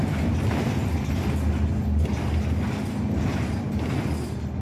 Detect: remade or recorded recorded